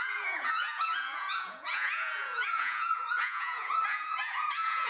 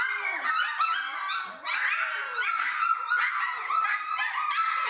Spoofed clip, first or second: first